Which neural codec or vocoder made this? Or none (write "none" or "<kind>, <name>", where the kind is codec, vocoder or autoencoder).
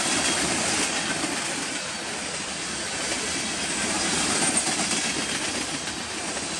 none